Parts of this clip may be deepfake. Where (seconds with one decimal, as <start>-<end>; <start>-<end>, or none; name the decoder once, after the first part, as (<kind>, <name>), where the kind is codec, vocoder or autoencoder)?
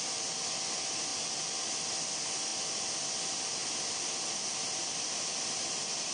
2.5-3.0 (vocoder, BigVGAN v2); 3.6-5.2